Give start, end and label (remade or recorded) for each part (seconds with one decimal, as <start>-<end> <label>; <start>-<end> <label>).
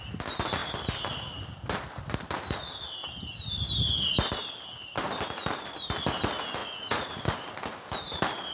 0.0-6.6 recorded; 6.6-7.2 remade; 7.2-8.5 recorded